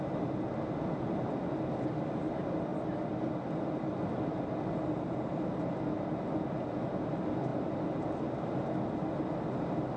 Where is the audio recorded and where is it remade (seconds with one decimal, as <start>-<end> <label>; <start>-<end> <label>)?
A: 0.0-7.5 recorded; 7.5-8.7 remade; 8.7-10.0 recorded